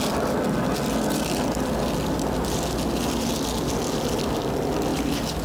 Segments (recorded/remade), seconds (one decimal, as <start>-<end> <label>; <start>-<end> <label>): 0.0-4.9 recorded; 4.9-5.4 remade